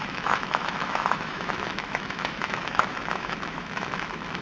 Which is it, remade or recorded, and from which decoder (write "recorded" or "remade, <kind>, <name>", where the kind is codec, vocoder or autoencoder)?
remade, autoencoder, DAC-VAE